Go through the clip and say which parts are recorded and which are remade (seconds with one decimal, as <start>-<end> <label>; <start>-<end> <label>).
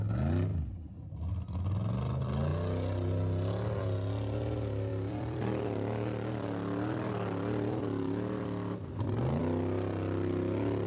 0.0-4.9 recorded; 4.9-9.4 remade; 9.4-10.9 recorded